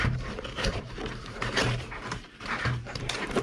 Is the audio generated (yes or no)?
yes